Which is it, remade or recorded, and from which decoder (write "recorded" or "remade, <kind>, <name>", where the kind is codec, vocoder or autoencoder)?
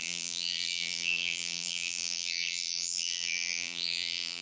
remade, vocoder, BigVGAN v2